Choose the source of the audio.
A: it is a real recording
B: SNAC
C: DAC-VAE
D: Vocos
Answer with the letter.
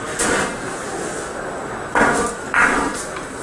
A